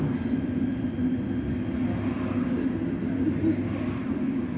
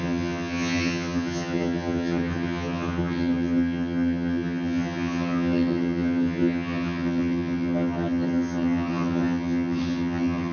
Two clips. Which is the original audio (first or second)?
first